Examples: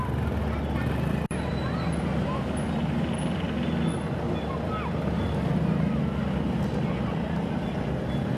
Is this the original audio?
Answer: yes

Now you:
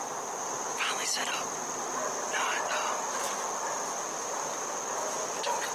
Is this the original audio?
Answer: yes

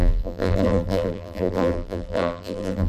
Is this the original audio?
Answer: no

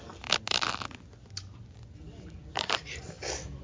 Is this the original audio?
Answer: yes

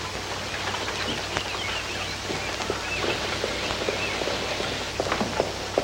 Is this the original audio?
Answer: yes